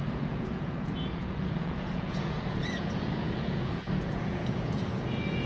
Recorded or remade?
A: remade